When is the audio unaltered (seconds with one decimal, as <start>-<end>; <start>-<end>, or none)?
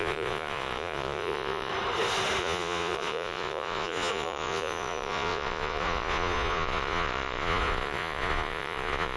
1.7-2.4